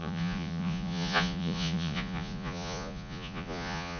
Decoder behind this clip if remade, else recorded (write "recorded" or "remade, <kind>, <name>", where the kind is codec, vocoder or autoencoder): remade, vocoder, Vocos